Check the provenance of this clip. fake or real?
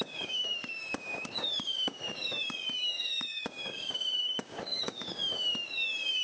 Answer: fake